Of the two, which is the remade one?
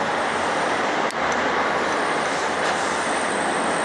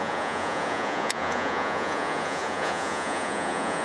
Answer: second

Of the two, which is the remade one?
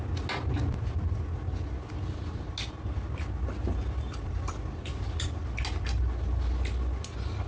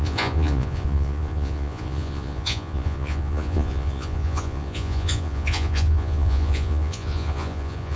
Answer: second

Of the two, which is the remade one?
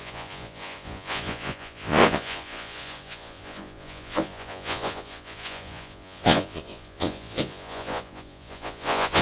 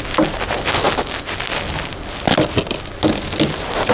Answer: first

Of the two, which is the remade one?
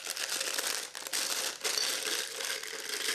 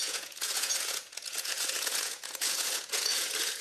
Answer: second